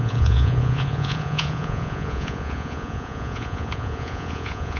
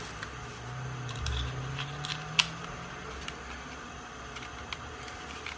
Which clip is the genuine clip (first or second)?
second